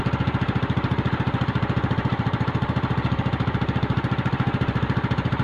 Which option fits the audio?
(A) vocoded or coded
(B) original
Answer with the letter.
A